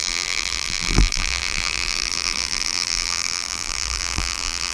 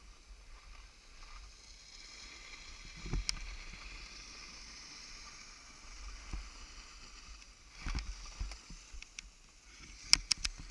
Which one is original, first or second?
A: second